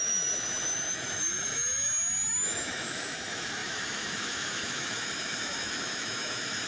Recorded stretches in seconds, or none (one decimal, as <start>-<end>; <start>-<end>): none